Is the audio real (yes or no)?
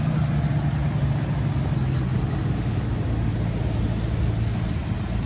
yes